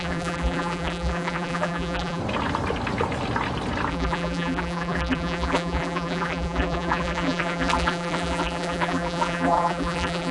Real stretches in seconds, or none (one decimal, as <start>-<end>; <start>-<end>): 2.2-3.9